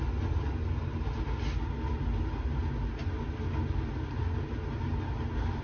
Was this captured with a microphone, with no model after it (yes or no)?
yes